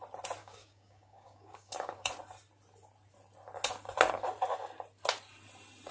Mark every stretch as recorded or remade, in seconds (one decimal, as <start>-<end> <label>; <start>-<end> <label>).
0.0-0.4 recorded; 0.4-2.1 remade; 2.1-5.9 recorded